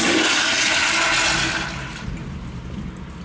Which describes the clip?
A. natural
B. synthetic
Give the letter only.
A